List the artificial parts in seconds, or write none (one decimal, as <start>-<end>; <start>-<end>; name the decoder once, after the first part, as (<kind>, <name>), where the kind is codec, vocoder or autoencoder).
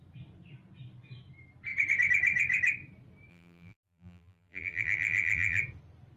3.3-5.6 (vocoder, BigVGAN v2)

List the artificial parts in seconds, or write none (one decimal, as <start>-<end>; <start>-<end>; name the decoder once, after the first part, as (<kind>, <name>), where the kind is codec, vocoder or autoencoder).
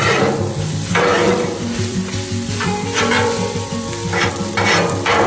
1.1-4.3 (vocoder, BigVGAN v2)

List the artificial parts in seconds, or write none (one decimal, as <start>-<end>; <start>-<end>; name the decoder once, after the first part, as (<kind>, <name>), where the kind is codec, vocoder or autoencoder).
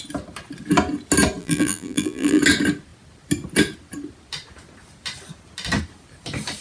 1.4-2.4 (vocoder, BigVGAN v2)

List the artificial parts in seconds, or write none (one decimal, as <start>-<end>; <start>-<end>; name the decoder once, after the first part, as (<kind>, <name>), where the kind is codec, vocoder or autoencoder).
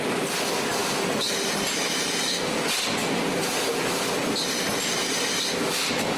none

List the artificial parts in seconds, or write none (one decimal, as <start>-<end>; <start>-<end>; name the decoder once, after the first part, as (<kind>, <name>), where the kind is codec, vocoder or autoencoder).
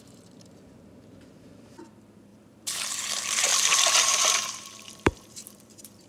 0.0-6.1 (vocoder, BigVGAN v2)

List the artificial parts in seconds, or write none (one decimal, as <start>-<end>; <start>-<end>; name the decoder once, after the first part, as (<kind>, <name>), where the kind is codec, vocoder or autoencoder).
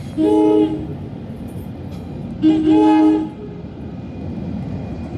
3.4-4.0 (vocoder, BigVGAN v2)